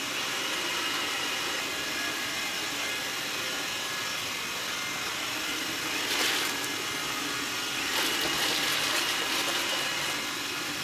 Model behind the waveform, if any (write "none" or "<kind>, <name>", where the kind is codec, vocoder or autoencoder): none